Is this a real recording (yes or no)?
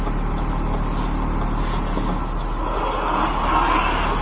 yes